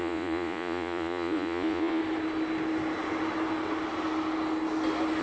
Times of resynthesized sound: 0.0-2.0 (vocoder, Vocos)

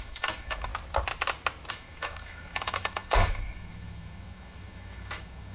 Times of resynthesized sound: 0.0-0.7 (autoencoder, DAC-VAE); 1.7-5.5